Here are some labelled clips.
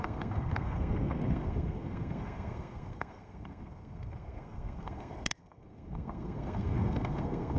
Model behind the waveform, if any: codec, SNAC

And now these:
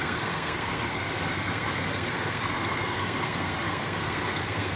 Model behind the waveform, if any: codec, SNAC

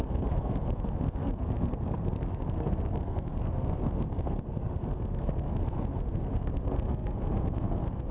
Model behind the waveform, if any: codec, SNAC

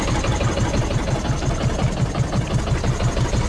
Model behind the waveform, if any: none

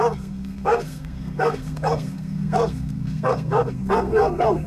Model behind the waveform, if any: codec, SNAC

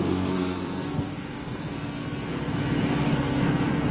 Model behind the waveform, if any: codec, SNAC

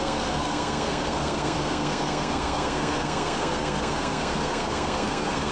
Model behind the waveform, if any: codec, SNAC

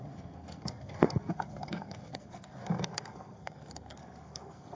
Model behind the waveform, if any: codec, SNAC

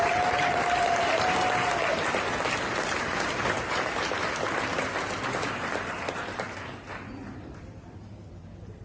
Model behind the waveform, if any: none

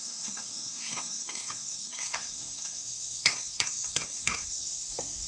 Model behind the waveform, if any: codec, SNAC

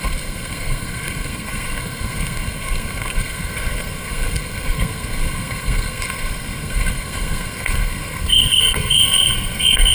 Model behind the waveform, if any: codec, SNAC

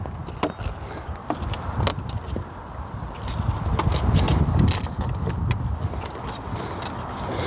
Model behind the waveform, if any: none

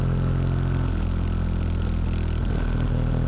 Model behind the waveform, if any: none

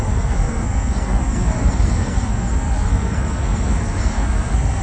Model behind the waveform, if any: codec, SNAC